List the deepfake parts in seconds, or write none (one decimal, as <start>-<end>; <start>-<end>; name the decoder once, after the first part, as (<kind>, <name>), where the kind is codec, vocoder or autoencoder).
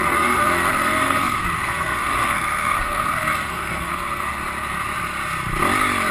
0.0-4.4 (codec, SNAC)